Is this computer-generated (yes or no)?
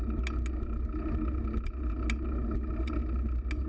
no